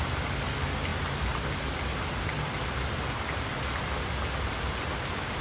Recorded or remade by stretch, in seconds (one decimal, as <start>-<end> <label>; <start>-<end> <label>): 0.0-5.4 recorded